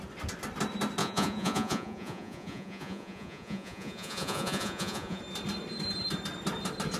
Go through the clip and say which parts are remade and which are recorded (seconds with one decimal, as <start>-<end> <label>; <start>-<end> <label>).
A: 0.0-1.0 recorded; 1.0-5.2 remade; 5.2-7.0 recorded